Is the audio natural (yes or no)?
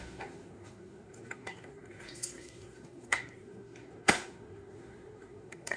no